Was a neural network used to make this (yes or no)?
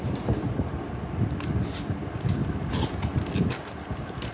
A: no